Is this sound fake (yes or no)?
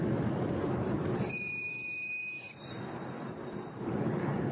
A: yes